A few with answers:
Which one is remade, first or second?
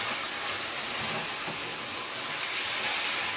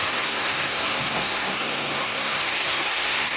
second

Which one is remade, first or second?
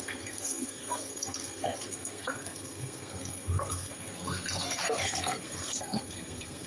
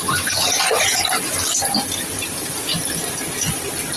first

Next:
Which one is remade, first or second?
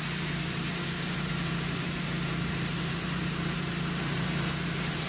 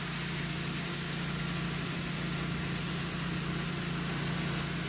first